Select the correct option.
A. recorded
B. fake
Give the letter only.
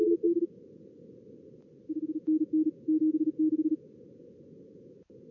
A